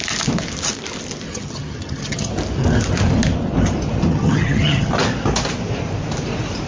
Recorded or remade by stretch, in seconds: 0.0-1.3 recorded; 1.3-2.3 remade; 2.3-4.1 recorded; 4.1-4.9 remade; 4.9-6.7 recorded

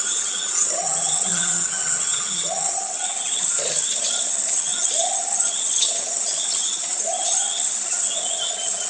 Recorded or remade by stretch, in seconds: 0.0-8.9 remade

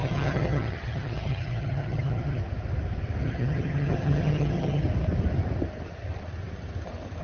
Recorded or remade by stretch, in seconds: 0.0-2.4 remade; 2.4-3.2 recorded; 3.2-4.8 remade; 4.8-7.2 recorded